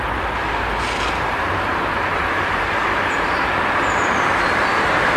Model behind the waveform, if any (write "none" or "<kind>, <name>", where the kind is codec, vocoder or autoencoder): none